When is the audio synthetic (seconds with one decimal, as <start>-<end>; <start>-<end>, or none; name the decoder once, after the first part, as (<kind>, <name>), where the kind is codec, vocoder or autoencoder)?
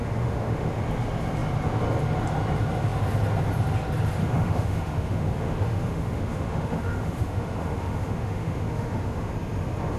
0.0-0.8 (autoencoder, DAC-VAE); 4.2-9.3